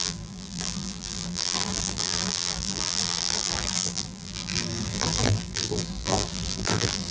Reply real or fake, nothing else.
fake